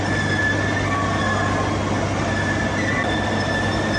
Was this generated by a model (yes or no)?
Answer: no